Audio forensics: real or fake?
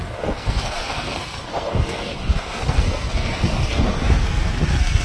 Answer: fake